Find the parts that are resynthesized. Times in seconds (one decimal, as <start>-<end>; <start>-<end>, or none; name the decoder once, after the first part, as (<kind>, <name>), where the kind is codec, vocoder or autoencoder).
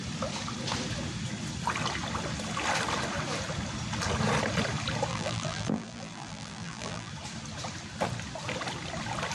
5.1-7.1 (vocoder, BigVGAN v2)